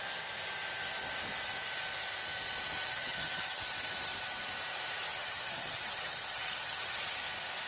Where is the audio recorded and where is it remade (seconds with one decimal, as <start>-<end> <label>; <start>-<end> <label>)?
0.0-2.9 recorded; 2.9-3.6 remade; 3.6-5.1 recorded; 5.1-7.2 remade; 7.2-7.7 recorded